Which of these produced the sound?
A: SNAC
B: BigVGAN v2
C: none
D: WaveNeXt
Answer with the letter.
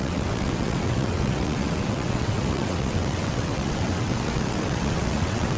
D